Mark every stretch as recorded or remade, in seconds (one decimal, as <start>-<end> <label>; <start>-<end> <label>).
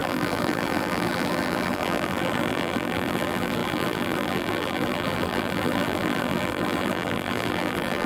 0.0-8.1 remade